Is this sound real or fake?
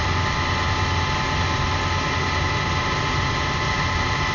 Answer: real